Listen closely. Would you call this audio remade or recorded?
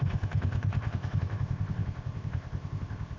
remade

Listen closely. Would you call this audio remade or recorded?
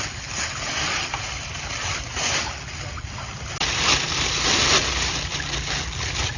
recorded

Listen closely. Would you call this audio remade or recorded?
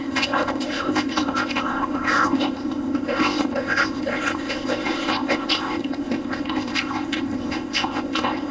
remade